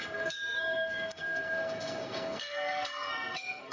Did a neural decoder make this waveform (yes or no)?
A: yes